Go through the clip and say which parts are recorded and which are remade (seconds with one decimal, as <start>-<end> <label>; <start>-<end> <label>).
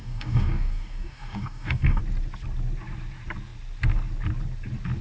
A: 0.0-2.0 remade; 2.0-5.0 recorded